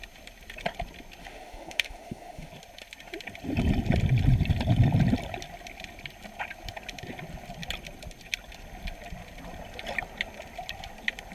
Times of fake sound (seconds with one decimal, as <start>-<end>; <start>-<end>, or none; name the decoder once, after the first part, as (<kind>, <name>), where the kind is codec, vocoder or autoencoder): 1.2-2.5 (autoencoder, DAC-VAE)